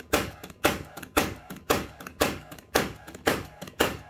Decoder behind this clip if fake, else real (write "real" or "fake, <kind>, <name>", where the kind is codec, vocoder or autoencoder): fake, codec, DAC